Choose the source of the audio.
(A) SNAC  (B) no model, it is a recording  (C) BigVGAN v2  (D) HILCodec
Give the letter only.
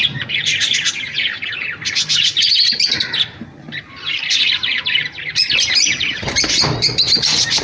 C